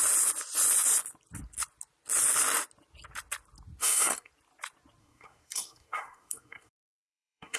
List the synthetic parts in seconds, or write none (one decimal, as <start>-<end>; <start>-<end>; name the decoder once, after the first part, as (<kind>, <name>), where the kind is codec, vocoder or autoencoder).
3.8-4.3 (codec, SNAC); 5.0-7.6